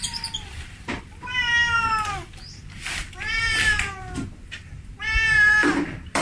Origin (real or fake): fake